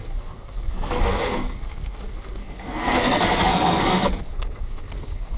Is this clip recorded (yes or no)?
no